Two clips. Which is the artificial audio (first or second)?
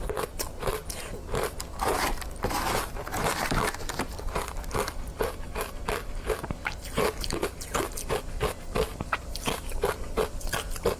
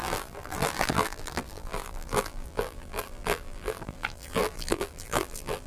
second